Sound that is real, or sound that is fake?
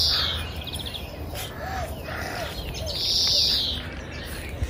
real